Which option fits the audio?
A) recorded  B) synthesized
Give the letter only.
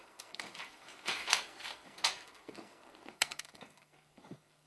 B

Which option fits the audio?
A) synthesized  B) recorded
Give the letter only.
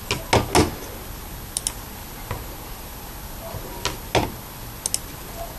B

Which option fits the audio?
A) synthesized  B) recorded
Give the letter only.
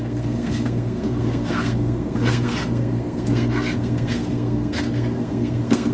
A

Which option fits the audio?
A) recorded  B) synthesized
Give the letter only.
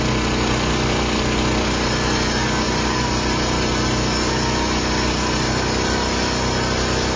A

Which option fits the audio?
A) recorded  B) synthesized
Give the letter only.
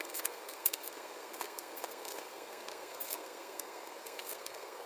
B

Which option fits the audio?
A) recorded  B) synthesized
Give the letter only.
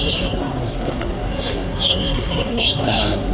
B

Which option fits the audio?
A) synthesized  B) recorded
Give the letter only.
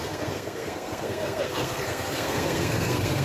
A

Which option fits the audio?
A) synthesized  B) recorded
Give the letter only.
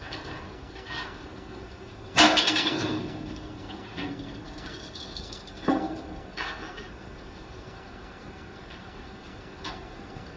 A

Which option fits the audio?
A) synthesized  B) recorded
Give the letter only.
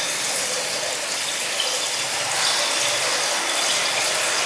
B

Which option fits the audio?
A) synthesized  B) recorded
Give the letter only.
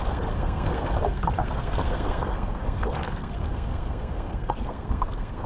A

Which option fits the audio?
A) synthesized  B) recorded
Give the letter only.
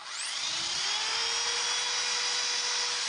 B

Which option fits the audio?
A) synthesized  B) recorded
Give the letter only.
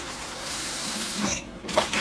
A